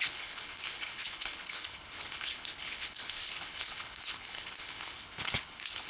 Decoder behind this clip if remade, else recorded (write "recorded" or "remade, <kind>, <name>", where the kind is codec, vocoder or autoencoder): remade, codec, HILCodec